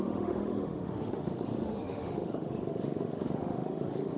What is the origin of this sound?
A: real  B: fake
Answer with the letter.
B